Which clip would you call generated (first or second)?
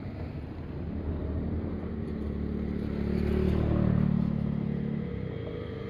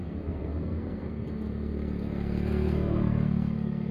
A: second